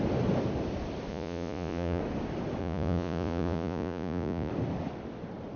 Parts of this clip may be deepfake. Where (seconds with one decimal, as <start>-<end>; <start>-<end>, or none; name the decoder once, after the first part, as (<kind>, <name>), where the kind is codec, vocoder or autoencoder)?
1.1-2.0 (vocoder, Vocos); 2.6-4.5